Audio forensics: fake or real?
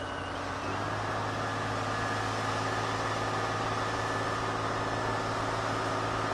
real